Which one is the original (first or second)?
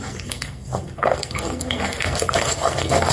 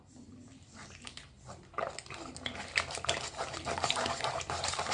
second